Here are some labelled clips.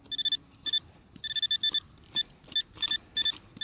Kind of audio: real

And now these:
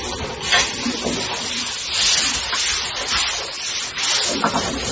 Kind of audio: real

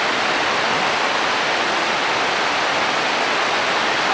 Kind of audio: real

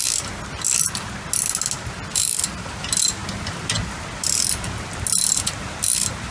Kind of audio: real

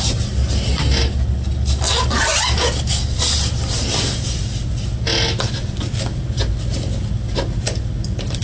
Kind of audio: real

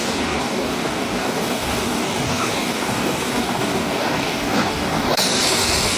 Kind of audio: fake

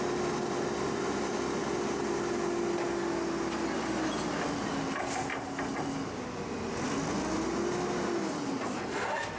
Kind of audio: real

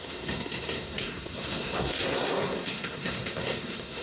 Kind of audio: fake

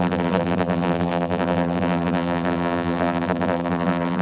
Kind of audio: fake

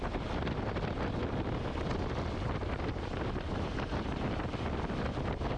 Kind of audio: real